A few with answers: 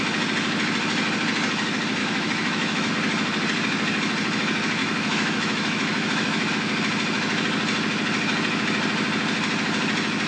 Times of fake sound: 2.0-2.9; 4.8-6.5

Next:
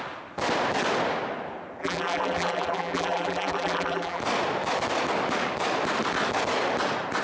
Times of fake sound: 1.8-4.2

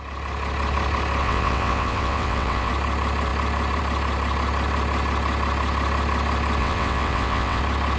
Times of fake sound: 1.2-2.7; 6.6-7.6

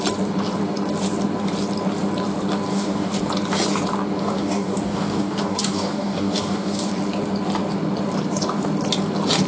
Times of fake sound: 2.7-3.3; 4.2-6.9